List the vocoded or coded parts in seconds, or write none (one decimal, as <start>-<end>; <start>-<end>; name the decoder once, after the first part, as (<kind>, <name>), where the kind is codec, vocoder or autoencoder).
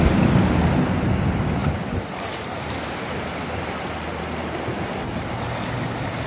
1.6-3.6 (vocoder, BigVGAN v2)